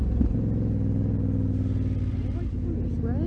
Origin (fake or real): real